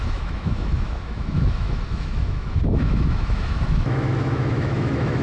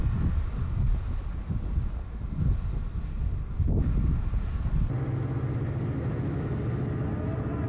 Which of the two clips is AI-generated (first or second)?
first